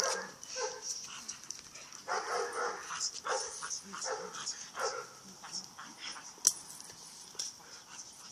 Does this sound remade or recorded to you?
recorded